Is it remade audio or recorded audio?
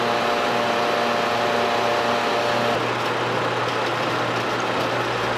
recorded